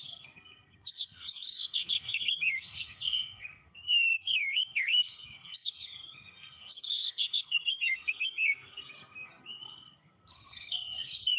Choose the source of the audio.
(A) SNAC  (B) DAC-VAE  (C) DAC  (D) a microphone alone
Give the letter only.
A